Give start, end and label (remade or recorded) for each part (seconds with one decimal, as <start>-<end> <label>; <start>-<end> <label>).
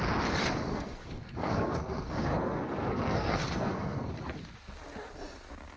0.0-0.7 recorded; 0.7-4.1 remade; 4.1-5.8 recorded